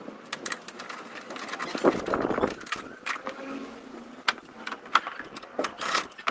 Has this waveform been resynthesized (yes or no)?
no